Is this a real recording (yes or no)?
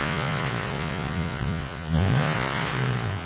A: no